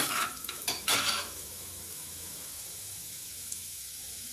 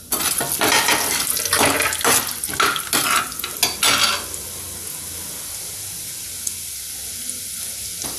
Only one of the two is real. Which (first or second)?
second